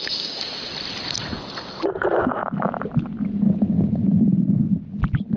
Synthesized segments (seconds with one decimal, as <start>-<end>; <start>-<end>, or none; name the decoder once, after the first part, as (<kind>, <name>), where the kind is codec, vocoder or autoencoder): none